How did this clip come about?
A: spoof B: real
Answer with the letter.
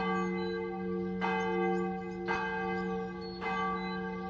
B